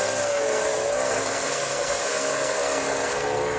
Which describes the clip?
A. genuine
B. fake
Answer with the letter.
B